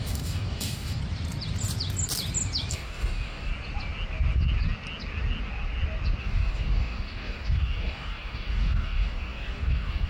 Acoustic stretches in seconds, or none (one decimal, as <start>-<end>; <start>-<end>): 1.0-2.7; 3.5-6.2